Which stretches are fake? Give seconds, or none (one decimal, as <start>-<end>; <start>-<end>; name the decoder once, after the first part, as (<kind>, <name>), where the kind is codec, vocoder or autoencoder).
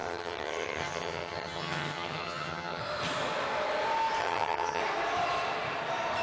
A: 0.0-2.8 (vocoder, HiFi-GAN); 4.2-4.8